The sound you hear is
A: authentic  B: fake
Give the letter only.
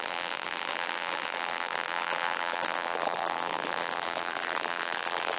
B